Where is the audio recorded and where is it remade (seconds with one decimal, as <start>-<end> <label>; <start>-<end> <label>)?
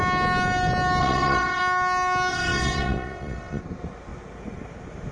0.0-1.0 recorded; 1.0-1.6 remade; 1.6-2.3 recorded; 2.3-3.6 remade; 3.6-5.1 recorded